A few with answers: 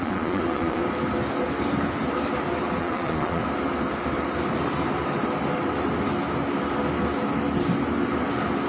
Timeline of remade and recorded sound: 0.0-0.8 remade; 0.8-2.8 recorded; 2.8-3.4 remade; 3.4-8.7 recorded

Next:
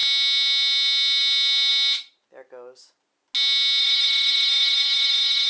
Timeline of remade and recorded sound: 0.0-3.8 recorded; 3.8-5.5 remade